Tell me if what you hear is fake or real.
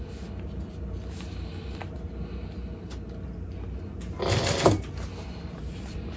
real